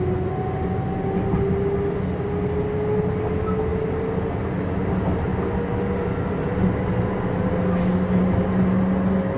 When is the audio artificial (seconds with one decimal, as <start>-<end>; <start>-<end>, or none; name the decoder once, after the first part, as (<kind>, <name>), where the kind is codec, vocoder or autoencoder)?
none